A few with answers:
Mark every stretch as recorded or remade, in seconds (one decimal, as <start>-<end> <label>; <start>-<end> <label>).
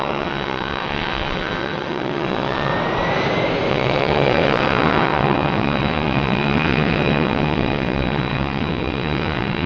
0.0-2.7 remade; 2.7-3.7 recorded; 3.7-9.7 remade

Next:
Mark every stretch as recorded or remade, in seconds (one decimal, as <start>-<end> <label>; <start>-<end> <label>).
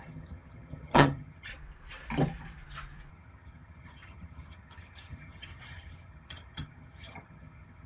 0.0-1.5 remade; 1.5-3.1 recorded; 3.1-7.9 remade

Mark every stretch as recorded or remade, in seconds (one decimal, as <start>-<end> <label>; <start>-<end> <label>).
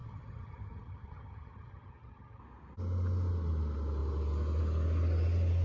0.0-2.4 remade; 2.4-5.6 recorded